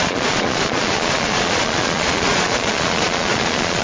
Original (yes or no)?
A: no